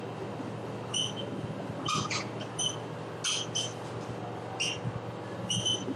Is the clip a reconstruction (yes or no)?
no